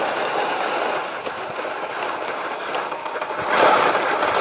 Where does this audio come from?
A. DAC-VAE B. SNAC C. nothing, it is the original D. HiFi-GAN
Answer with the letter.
C